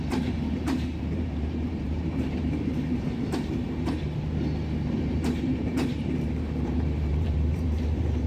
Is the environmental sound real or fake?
fake